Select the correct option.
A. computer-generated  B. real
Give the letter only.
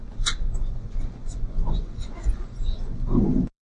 A